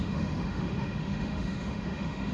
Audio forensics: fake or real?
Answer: fake